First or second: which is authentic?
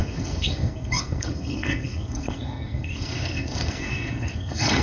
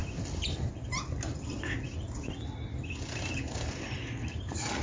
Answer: second